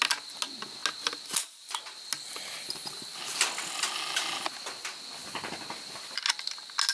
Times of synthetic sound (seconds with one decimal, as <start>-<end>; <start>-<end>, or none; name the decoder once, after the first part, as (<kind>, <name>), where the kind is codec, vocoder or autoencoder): none